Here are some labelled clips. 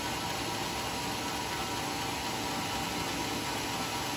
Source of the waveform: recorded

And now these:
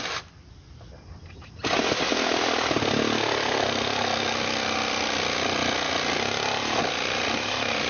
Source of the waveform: recorded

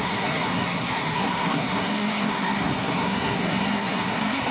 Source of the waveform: remade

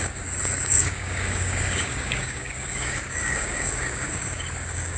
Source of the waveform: remade